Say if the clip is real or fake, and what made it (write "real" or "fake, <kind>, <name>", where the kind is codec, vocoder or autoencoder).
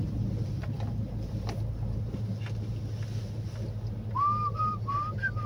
real